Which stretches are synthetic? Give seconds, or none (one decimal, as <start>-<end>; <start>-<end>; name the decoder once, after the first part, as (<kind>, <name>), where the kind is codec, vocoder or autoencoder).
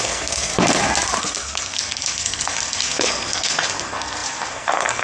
0.0-0.5 (codec, SNAC); 1.2-5.0